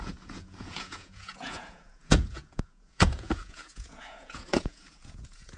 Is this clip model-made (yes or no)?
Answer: yes